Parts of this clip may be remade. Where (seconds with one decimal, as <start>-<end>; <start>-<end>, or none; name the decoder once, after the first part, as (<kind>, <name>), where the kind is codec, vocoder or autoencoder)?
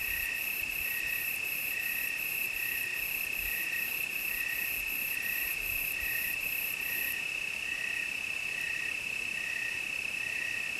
0.0-2.9 (vocoder, BigVGAN v2); 4.9-10.8